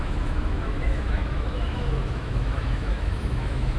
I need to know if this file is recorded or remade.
remade